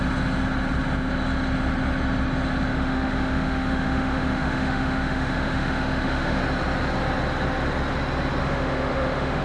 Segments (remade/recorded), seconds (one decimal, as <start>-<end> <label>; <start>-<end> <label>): 0.0-2.7 recorded; 2.7-6.4 remade; 6.4-8.4 recorded; 8.4-9.4 remade